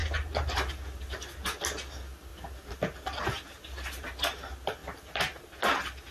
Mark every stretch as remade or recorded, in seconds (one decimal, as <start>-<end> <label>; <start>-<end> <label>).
0.0-2.3 recorded; 2.3-3.2 remade; 3.2-4.8 recorded; 4.8-5.5 remade; 5.5-6.1 recorded